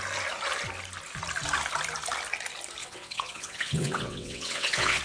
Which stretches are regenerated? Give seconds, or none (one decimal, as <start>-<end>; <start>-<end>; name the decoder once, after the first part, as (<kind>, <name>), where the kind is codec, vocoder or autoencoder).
2.8-5.0 (vocoder, WaveNeXt)